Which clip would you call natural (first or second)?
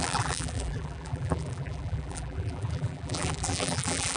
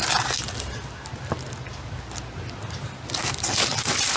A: second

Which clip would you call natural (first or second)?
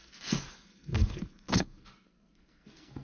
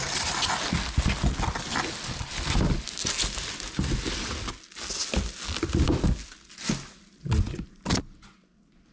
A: second